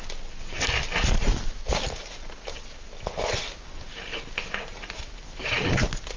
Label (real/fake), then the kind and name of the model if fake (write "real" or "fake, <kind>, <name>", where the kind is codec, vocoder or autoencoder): real